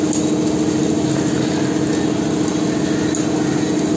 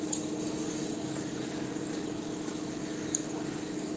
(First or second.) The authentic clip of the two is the first